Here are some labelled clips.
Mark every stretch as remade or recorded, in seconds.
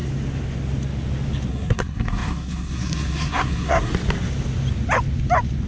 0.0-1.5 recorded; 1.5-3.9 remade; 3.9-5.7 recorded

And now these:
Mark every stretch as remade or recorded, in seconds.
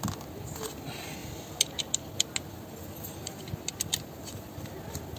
0.0-5.2 recorded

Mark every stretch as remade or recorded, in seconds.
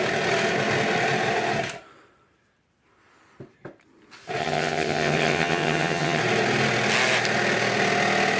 0.0-4.4 recorded; 4.4-6.2 remade; 6.2-8.4 recorded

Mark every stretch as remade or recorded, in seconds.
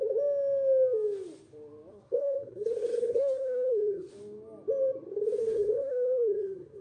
0.0-1.9 recorded; 1.9-4.1 remade; 4.1-5.4 recorded; 5.4-6.8 remade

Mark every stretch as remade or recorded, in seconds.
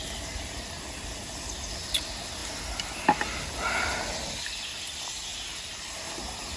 0.0-6.6 recorded